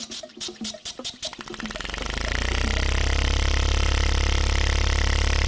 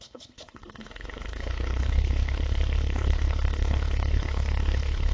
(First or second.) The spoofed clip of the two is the second